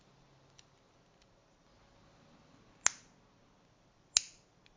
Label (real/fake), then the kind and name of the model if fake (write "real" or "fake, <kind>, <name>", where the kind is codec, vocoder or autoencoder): real